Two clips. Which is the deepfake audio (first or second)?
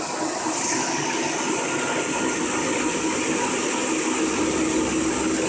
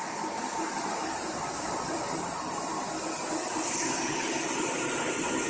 second